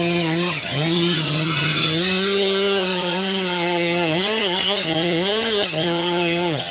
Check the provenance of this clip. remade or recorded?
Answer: remade